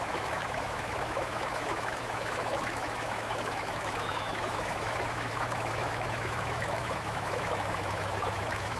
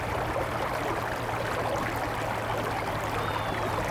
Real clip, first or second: second